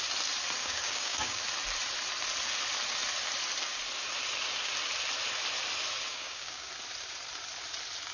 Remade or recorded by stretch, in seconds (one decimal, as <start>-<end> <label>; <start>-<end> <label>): 0.0-0.6 recorded; 0.6-1.4 remade; 1.4-6.1 recorded; 6.1-6.7 remade; 6.7-8.1 recorded